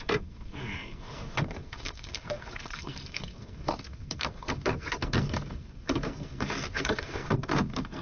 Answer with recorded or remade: remade